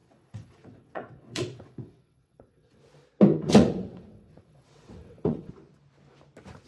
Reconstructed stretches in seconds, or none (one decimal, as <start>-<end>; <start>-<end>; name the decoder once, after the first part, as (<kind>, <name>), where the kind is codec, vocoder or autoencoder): 0.0-2.8 (vocoder, WaveNeXt); 3.3-5.5